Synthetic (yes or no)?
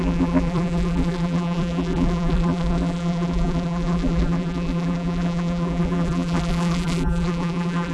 yes